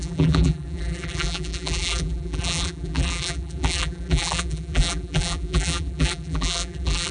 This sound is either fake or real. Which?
fake